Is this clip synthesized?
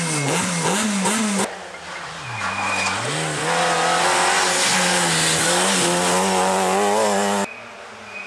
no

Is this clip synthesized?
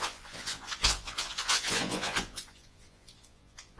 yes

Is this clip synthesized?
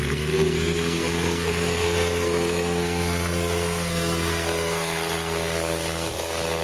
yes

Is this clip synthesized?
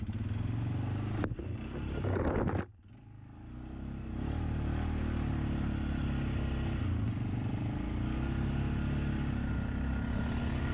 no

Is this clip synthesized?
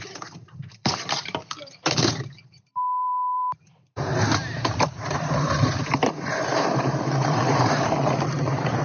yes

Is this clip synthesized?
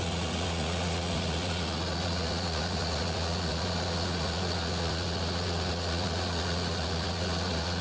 yes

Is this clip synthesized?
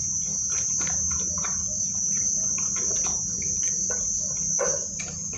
yes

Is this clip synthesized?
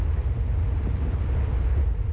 no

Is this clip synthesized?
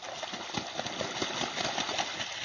no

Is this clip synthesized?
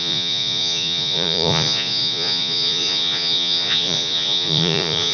yes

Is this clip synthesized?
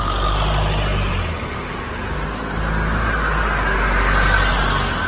no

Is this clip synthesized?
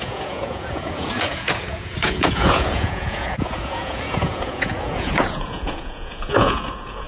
yes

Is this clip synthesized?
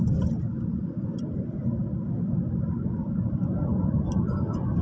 no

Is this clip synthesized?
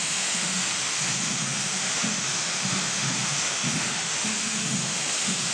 yes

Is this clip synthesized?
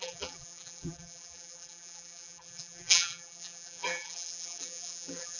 yes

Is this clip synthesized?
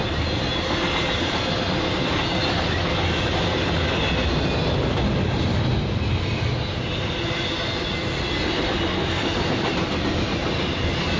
no